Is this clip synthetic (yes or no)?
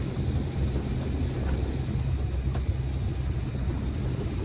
no